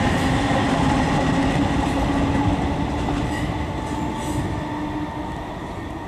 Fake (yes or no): no